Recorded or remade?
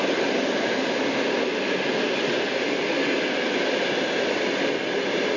recorded